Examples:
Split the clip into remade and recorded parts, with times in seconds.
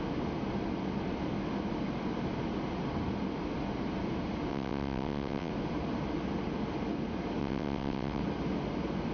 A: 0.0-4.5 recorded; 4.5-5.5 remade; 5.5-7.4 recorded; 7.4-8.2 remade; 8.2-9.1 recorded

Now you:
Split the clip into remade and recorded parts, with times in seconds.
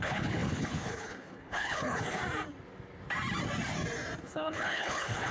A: 0.0-2.2 remade; 2.2-4.2 recorded; 4.2-5.3 remade